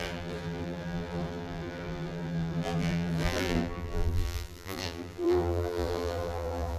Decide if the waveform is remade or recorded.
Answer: remade